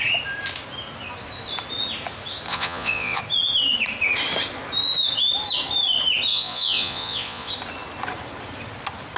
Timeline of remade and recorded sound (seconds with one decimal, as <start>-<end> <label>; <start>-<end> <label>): 0.0-2.5 recorded; 2.5-3.2 remade; 3.2-6.3 recorded; 6.3-7.5 remade; 7.5-9.2 recorded